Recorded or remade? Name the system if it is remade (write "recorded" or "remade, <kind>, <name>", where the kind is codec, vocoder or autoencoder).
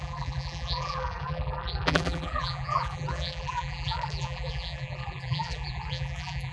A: remade, vocoder, BigVGAN v2